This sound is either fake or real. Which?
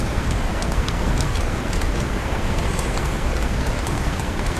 fake